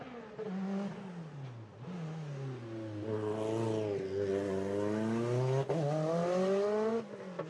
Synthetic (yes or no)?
no